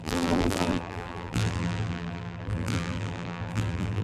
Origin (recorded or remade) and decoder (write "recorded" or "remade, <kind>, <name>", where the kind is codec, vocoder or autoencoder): remade, vocoder, BigVGAN v2